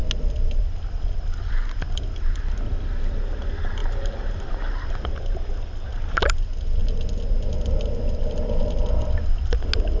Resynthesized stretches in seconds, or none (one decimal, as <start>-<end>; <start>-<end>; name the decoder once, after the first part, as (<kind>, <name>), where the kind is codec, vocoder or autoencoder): none